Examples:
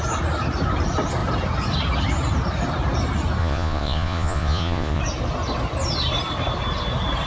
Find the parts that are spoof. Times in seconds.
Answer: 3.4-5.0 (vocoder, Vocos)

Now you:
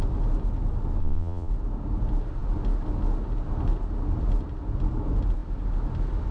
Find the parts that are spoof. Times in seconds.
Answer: 1.0-1.5 (vocoder, Vocos)

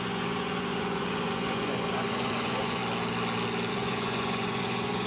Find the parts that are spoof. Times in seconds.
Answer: 0.0-2.8 (vocoder, Vocos); 3.7-5.1

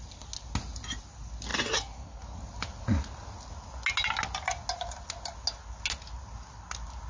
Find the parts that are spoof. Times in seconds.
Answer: none

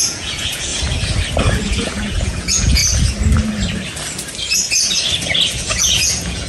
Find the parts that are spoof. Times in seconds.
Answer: 0.0-0.7 (vocoder, Vocos); 1.4-2.8; 5.6-6.5

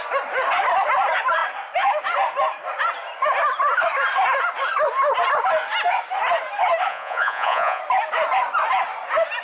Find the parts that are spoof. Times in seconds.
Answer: 6.9-7.8 (vocoder, Vocos)

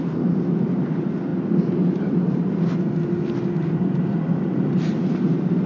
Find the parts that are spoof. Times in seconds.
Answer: none

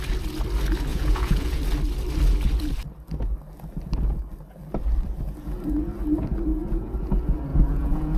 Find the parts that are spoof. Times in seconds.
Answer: 0.9-1.6 (vocoder, Vocos); 6.5-7.1; 7.5-8.2